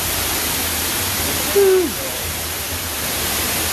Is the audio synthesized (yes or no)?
no